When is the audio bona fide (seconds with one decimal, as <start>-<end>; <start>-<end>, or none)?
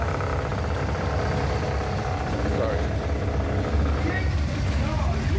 0.0-5.4